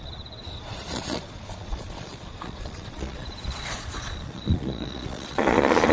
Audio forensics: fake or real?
fake